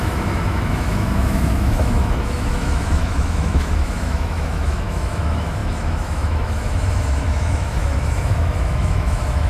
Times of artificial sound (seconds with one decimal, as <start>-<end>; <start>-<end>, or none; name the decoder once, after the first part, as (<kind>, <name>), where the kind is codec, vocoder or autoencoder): 0.0-9.5 (autoencoder, DAC-VAE)